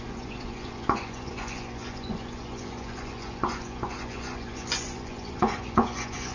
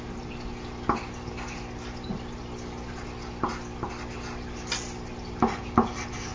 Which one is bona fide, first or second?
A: second